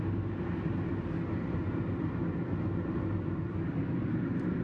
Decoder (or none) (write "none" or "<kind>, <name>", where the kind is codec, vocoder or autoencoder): none